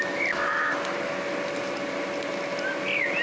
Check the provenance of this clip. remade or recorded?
recorded